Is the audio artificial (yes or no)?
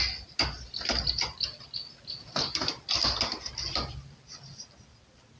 no